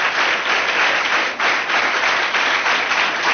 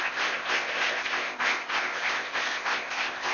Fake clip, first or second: second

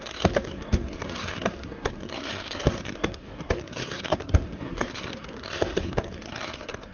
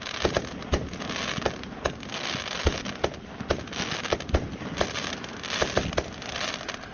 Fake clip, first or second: first